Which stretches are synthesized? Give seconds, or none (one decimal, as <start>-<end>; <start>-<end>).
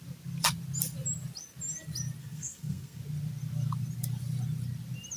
2.2-3.0